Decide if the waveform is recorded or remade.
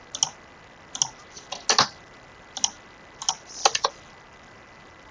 recorded